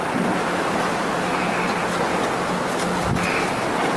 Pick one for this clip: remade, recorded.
recorded